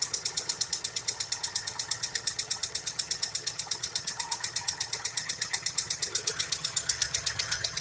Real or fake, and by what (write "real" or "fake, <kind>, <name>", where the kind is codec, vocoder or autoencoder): fake, vocoder, HiFi-GAN